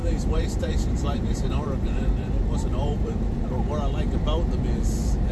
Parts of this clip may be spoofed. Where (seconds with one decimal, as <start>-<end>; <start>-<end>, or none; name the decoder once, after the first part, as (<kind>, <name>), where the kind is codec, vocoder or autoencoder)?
0.0-3.2 (vocoder, BigVGAN v2)